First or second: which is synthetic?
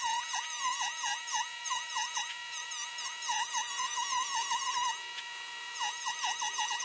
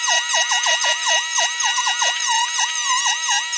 first